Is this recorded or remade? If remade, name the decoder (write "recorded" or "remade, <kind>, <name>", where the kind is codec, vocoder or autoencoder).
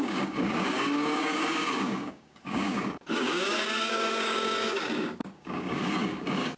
remade, codec, DAC